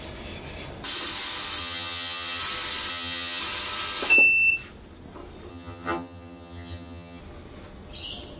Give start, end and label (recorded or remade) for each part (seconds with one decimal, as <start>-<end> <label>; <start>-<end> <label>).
0.0-1.6 recorded; 1.6-2.4 remade; 2.4-2.9 recorded; 2.9-3.4 remade; 3.4-5.5 recorded; 5.5-7.2 remade; 7.2-8.4 recorded